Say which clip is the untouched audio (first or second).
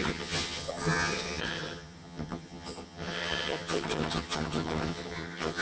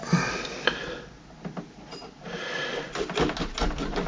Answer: second